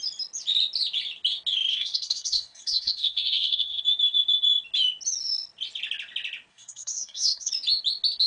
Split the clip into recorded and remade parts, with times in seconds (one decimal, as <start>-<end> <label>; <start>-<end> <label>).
0.0-1.7 recorded; 1.7-3.8 remade; 3.8-6.5 recorded; 6.5-7.5 remade; 7.5-8.3 recorded